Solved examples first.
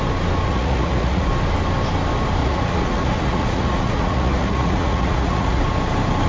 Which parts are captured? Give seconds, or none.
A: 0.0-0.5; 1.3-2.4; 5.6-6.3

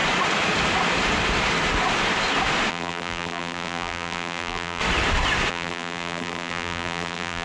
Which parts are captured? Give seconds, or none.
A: 0.0-2.7; 4.8-5.5